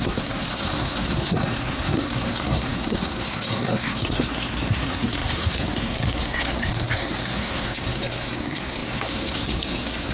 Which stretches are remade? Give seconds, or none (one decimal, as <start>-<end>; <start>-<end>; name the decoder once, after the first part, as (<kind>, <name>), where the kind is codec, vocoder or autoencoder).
0.0-10.1 (codec, SNAC)